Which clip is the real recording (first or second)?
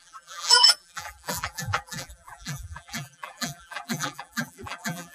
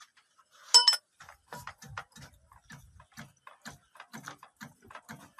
second